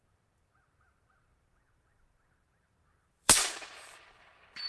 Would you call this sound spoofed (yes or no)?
yes